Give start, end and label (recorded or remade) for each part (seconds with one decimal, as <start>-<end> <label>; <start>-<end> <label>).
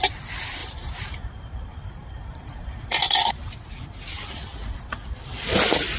0.0-0.6 recorded; 0.6-3.3 remade; 3.3-6.0 recorded